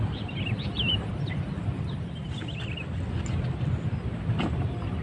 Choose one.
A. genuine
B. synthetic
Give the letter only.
A